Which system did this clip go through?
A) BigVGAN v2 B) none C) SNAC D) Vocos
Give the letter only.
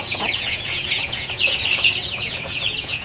D